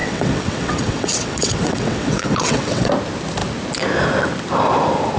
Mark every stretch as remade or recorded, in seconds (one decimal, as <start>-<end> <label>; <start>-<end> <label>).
0.0-2.9 remade; 2.9-5.2 recorded